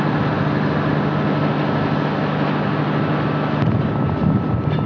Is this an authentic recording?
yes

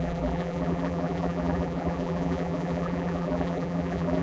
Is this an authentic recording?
no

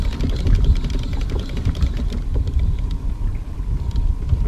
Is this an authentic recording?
yes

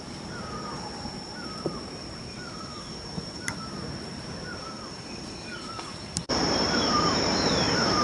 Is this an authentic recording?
no